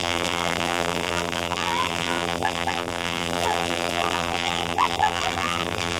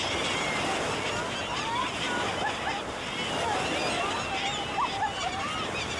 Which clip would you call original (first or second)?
second